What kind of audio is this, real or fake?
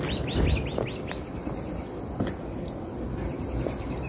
real